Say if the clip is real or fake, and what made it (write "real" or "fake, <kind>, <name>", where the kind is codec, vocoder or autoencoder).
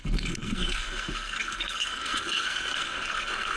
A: fake, codec, SNAC